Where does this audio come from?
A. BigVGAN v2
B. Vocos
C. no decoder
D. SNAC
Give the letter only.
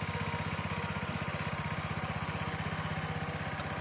C